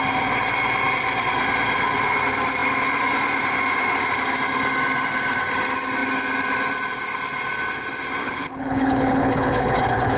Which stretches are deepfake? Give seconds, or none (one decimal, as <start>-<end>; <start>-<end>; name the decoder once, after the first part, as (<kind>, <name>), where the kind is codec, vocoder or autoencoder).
8.2-10.2 (codec, HILCodec)